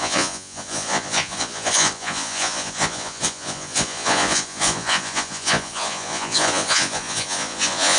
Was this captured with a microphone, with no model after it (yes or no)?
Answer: no